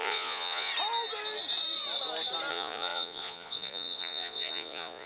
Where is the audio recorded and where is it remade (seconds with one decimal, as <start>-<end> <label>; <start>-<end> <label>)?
0.0-0.7 remade; 0.7-2.5 recorded; 2.5-5.1 remade